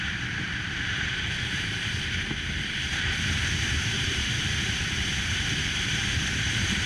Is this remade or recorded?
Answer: remade